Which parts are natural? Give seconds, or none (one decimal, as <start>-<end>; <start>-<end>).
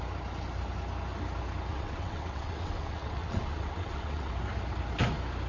0.0-1.7; 4.3-5.5